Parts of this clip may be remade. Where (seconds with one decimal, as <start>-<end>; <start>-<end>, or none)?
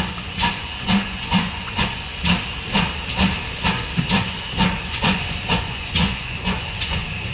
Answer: 0.0-2.1; 4.1-7.3